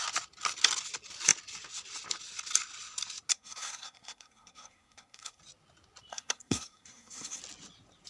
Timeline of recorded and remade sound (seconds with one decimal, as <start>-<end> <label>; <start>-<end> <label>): 0.0-3.3 recorded; 3.3-5.4 remade; 5.4-6.1 recorded; 6.1-7.4 remade; 7.4-8.1 recorded